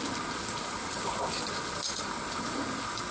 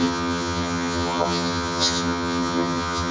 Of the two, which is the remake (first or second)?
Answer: second